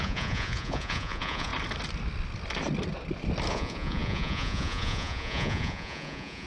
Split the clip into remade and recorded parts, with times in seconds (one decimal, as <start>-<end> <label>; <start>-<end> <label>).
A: 0.0-1.5 remade; 1.5-3.5 recorded; 3.5-6.5 remade